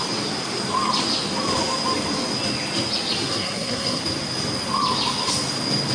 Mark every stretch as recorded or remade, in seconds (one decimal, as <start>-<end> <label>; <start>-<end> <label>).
0.0-3.2 recorded; 3.2-4.0 remade; 4.0-5.9 recorded